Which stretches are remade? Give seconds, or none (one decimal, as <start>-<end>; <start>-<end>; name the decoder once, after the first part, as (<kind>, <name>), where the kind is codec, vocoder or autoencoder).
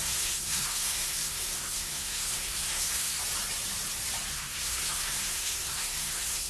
0.0-3.2 (codec, SNAC); 4.3-6.5